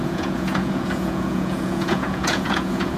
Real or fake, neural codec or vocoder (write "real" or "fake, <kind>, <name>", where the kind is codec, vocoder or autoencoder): fake, vocoder, Vocos